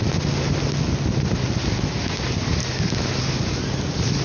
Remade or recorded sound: recorded